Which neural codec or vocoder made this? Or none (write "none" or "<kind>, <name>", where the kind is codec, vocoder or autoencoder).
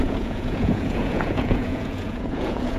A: vocoder, Vocos